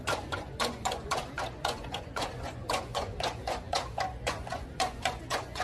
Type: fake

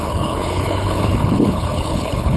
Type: fake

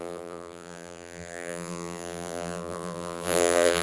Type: fake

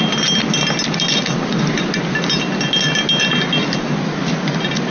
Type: real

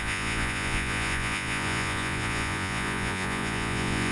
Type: fake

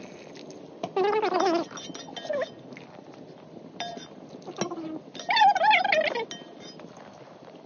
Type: real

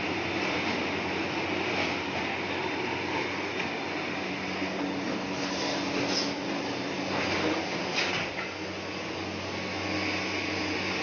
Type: real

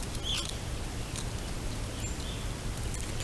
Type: real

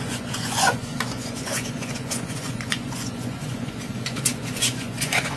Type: fake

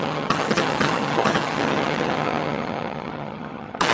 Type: fake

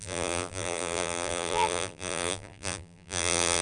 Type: fake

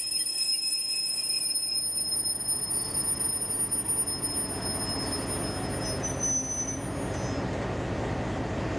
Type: real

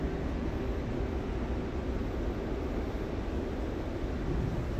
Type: real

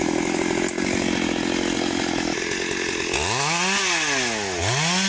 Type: real